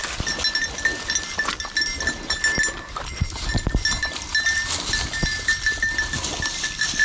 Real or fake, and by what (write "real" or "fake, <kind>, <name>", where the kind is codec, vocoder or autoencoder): real